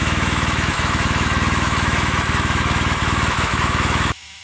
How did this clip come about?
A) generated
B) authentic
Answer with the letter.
A